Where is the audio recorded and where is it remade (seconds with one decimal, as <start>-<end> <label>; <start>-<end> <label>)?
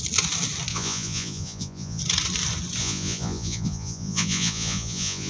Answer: 0.0-0.7 recorded; 0.7-2.0 remade; 2.0-2.8 recorded; 2.8-5.3 remade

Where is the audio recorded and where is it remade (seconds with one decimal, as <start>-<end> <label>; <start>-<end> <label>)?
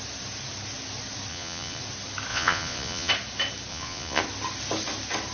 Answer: 0.0-1.3 recorded; 1.3-1.8 remade; 1.8-2.3 recorded; 2.3-3.1 remade; 3.1-3.7 recorded; 3.7-4.2 remade; 4.2-5.3 recorded